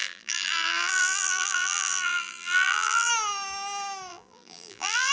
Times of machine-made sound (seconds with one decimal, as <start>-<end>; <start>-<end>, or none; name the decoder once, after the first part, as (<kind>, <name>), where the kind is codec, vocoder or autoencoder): 0.0-3.1 (vocoder, BigVGAN v2); 4.1-5.1